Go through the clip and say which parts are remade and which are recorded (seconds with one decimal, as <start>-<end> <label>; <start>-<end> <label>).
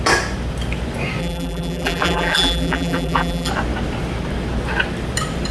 0.0-1.2 recorded; 1.2-3.5 remade; 3.5-5.5 recorded